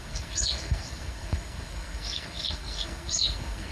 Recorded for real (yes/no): no